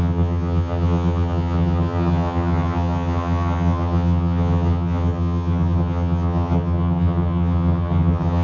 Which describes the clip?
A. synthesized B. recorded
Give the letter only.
A